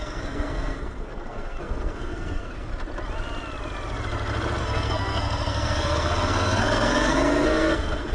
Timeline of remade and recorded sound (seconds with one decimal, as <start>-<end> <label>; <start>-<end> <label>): 0.0-2.7 remade; 2.7-4.6 recorded; 4.6-8.1 remade